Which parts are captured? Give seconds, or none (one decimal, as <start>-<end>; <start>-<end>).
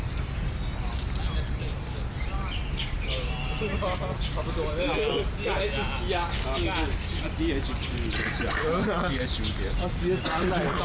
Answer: 0.0-10.8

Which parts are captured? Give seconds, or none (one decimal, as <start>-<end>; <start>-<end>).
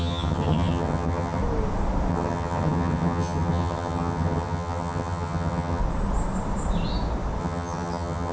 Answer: 1.4-2.1; 5.8-7.4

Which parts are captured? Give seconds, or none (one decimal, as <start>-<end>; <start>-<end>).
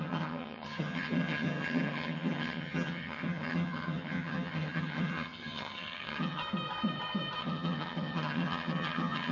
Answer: 6.4-7.4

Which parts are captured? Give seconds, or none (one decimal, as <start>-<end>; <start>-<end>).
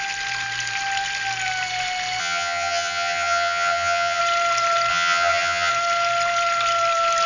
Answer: 0.0-2.2; 4.2-4.9; 5.7-7.3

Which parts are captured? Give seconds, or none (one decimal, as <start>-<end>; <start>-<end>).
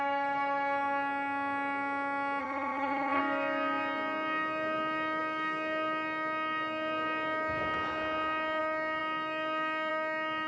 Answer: 0.0-2.4; 3.2-10.5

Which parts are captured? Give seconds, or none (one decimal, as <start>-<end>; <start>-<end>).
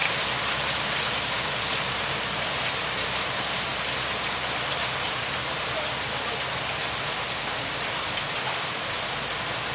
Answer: 0.0-9.7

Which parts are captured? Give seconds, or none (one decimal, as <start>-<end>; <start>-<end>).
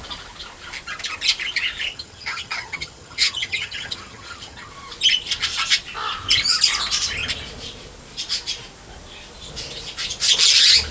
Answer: 0.0-1.9; 4.7-10.9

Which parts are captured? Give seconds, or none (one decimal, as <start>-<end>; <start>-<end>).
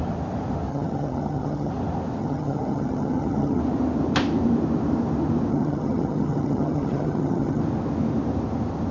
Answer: 0.0-0.7; 1.7-2.2; 3.6-5.5; 7.6-8.9